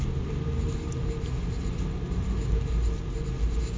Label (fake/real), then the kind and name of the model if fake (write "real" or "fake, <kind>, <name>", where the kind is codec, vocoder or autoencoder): real